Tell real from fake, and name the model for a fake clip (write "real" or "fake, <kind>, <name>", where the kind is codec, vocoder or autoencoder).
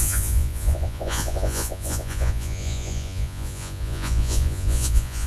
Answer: fake, vocoder, Vocos